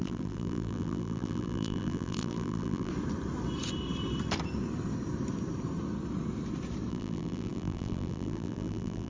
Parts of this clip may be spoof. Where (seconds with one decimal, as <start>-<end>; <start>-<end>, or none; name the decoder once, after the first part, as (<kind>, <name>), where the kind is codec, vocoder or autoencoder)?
0.0-2.9 (vocoder, BigVGAN v2); 6.9-9.1